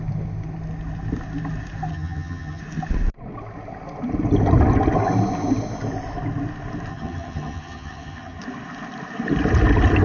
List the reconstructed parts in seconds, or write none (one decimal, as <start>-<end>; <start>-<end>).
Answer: 1.9-2.6; 6.9-8.4